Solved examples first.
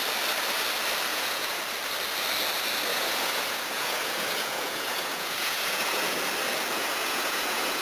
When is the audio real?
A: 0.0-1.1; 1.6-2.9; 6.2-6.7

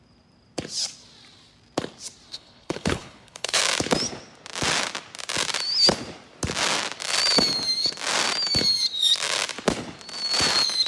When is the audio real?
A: 0.0-2.3; 3.6-10.9

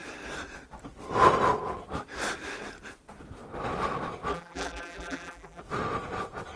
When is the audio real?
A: 0.0-4.3; 5.6-6.6

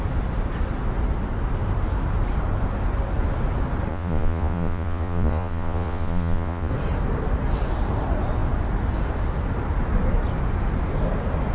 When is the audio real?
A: 0.0-3.9; 6.7-11.5

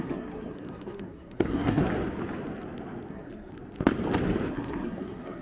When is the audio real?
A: 1.8-3.1; 3.5-4.5

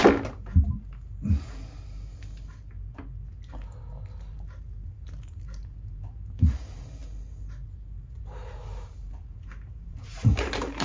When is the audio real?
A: 0.0-4.3; 7.0-8.2

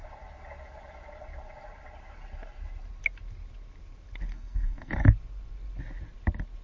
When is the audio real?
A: 0.0-4.3; 5.1-6.6

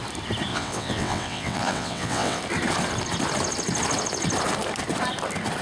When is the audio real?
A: 0.0-0.5; 2.4-5.6